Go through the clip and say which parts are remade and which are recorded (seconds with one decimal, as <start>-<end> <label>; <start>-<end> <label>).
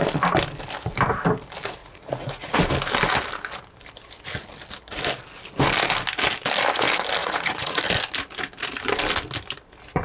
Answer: 0.0-1.8 recorded; 1.8-2.6 remade; 2.6-7.2 recorded; 7.2-7.8 remade; 7.8-10.0 recorded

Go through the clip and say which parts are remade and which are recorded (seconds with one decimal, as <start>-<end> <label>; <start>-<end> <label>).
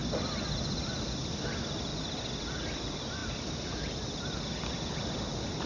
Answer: 0.0-0.8 recorded; 0.8-1.9 remade; 1.9-2.6 recorded; 2.6-5.7 remade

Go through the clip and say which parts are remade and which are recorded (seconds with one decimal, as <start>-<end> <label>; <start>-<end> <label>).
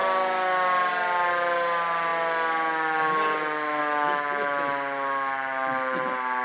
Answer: 0.0-6.4 recorded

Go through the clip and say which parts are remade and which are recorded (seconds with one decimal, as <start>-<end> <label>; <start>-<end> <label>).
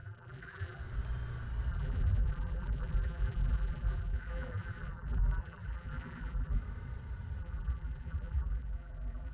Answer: 0.0-0.8 remade; 0.8-1.7 recorded; 1.7-6.6 remade; 6.6-7.4 recorded; 7.4-9.3 remade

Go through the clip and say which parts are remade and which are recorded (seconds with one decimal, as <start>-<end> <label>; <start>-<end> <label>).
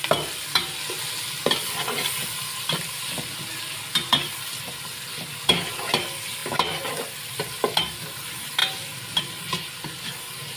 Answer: 0.0-10.6 recorded